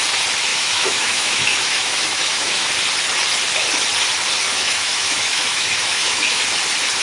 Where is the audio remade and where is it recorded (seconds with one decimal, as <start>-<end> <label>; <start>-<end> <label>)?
0.0-0.5 recorded; 0.5-2.7 remade; 2.7-4.5 recorded; 4.5-6.4 remade; 6.4-7.0 recorded

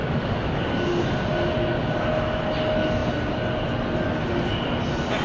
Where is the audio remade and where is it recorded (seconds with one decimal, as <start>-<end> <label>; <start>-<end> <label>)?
0.0-0.5 remade; 0.5-5.2 recorded

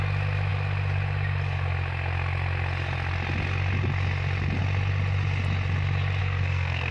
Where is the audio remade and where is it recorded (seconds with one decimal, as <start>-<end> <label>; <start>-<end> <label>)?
0.0-6.2 recorded; 6.2-6.9 remade

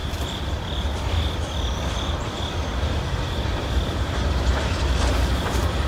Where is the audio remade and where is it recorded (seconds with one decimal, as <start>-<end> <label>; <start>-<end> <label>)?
0.0-5.9 remade

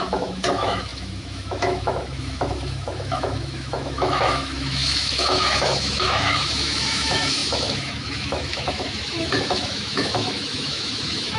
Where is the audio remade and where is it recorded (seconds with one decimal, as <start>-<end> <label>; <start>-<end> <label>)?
0.0-11.4 remade

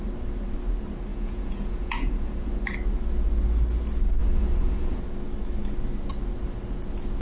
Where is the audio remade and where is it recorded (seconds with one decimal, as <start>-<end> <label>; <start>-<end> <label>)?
0.0-1.1 recorded; 1.1-2.5 remade; 2.5-4.2 recorded; 4.2-5.0 remade; 5.0-7.2 recorded

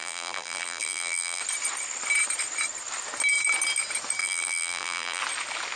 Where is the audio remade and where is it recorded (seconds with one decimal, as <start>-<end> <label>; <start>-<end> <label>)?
0.0-1.4 remade; 1.4-4.2 recorded; 4.2-5.2 remade; 5.2-5.8 recorded